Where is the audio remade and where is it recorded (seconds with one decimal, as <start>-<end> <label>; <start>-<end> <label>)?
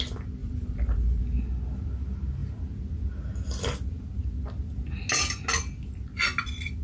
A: 0.0-0.4 recorded; 0.4-1.2 remade; 1.2-6.8 recorded